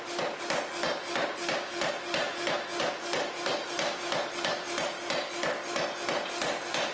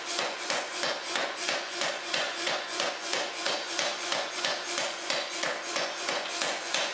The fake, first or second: second